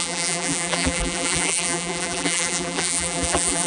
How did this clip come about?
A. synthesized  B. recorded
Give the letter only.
A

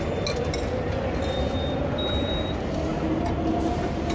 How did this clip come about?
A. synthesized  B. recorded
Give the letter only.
B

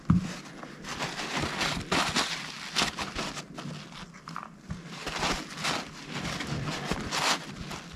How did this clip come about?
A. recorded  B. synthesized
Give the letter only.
A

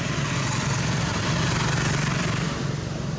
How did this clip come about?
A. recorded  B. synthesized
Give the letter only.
B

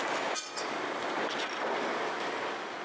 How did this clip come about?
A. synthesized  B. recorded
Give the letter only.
B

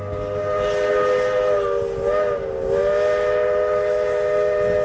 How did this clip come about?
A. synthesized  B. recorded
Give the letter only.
B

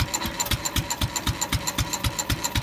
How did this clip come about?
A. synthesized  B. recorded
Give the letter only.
B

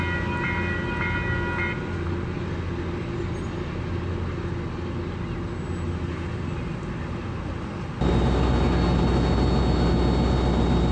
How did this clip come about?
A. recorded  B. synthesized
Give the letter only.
A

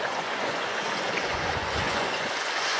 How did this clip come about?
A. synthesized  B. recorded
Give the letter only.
A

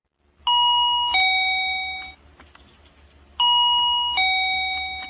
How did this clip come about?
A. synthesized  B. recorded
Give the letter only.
B